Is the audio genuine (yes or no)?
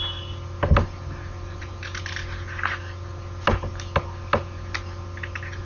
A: yes